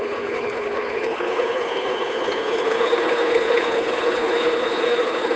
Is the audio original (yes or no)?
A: no